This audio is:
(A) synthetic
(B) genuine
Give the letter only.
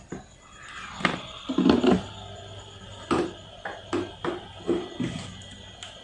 B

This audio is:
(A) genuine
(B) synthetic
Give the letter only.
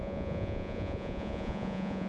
B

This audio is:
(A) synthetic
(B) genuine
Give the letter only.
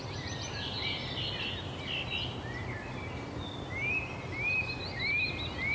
B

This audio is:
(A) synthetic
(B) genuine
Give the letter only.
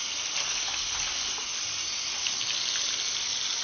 B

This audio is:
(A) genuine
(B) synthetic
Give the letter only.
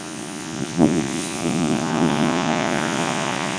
B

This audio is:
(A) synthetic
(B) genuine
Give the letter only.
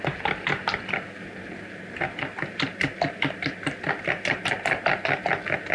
B